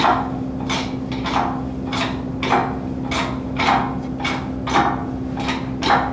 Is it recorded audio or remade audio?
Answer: recorded